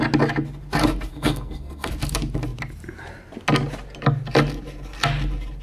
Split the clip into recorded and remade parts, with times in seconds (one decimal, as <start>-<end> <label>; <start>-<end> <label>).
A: 0.0-1.1 recorded; 1.1-1.9 remade; 1.9-5.6 recorded